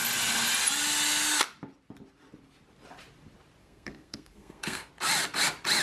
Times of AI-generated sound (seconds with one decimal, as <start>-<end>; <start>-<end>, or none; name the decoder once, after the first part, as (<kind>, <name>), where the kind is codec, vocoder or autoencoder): 3.6-4.9 (codec, SNAC)